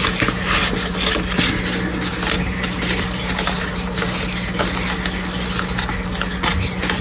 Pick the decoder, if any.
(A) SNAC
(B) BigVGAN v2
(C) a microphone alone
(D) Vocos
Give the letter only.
C